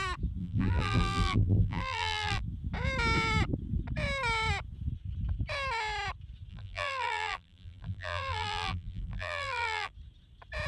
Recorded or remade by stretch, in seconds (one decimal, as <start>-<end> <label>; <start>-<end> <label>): 0.0-0.4 recorded; 0.4-2.4 remade; 2.4-6.5 recorded; 6.5-9.9 remade; 9.9-10.7 recorded